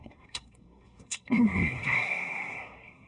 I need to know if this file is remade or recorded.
remade